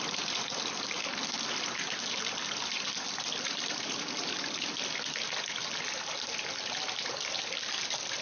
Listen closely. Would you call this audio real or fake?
real